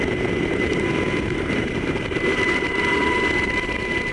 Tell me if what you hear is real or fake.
fake